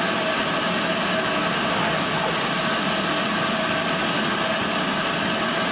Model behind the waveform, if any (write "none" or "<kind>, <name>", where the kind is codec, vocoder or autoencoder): none